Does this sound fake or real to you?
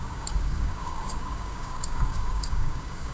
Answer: fake